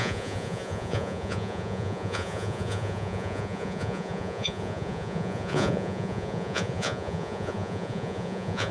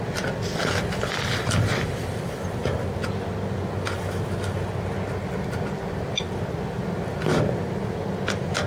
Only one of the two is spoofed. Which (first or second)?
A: first